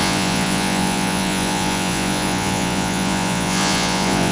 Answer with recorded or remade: remade